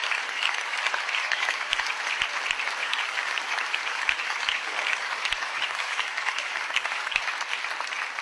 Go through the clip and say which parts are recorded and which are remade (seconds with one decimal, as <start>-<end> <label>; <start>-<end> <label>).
0.0-2.0 remade; 2.0-2.8 recorded; 2.8-7.2 remade; 7.2-8.2 recorded